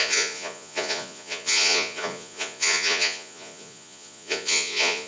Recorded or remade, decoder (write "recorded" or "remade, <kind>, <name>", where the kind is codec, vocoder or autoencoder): remade, vocoder, Vocos